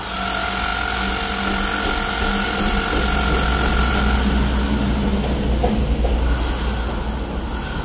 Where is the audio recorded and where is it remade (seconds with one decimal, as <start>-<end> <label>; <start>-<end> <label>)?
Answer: 0.0-7.8 recorded